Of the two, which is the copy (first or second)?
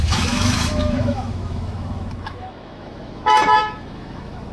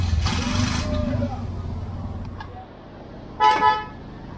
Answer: first